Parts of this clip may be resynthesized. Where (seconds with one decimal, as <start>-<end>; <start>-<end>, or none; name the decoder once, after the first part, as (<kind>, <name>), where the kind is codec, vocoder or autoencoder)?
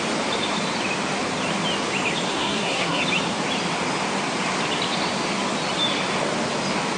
2.3-3.0 (codec, SNAC)